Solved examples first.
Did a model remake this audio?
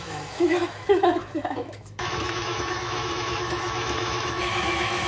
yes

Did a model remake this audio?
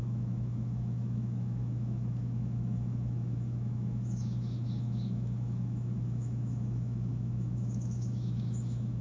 yes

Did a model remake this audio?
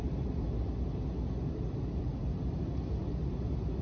no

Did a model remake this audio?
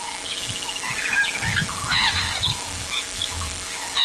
yes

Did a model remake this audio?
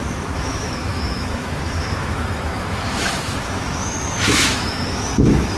yes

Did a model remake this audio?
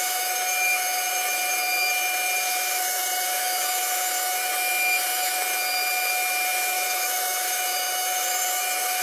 yes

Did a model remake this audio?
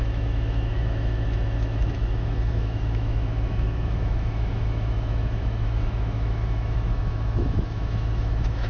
yes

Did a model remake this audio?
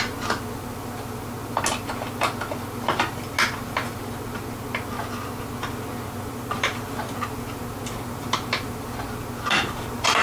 no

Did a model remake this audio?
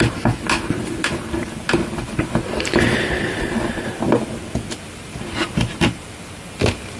no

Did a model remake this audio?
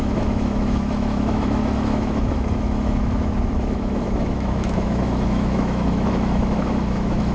yes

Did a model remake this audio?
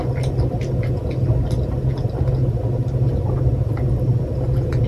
no